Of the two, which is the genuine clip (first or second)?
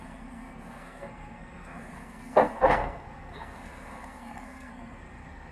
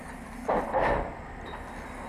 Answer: second